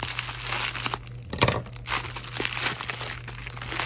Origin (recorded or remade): recorded